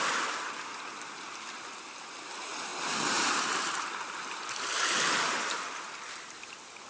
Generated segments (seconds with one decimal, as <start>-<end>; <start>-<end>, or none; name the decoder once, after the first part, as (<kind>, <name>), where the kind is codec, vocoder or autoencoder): none

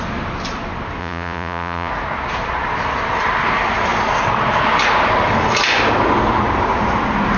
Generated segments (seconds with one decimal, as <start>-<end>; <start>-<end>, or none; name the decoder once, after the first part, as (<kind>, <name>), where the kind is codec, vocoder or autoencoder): 1.0-1.9 (vocoder, Vocos)